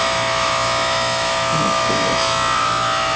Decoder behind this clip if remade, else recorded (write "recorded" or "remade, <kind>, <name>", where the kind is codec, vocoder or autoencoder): remade, autoencoder, DAC-VAE